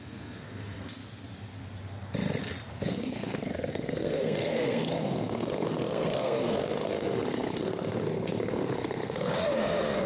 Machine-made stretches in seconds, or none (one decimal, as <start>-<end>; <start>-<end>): 0.0-1.0; 2.7-10.1